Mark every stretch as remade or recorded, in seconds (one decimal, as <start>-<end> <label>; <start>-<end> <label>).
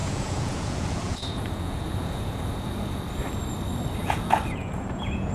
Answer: 0.0-3.0 remade; 3.0-4.0 recorded; 4.0-5.3 remade